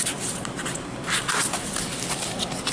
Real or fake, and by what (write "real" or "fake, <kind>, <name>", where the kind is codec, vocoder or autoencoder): real